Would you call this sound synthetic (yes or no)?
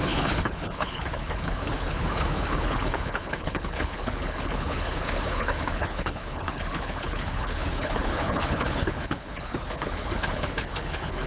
yes